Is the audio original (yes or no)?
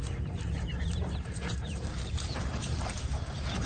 no